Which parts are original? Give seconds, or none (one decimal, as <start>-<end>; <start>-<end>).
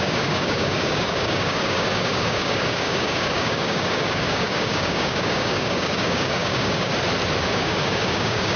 6.9-7.4